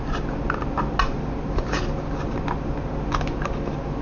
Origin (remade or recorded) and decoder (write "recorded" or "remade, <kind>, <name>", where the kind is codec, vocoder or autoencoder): recorded